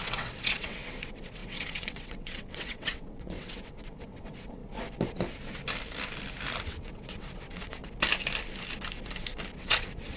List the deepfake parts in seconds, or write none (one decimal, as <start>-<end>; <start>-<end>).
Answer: 0.0-4.6; 6.6-7.8; 9.6-10.2